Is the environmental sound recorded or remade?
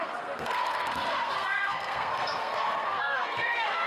remade